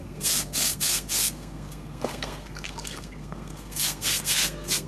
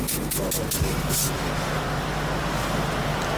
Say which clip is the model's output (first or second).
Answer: first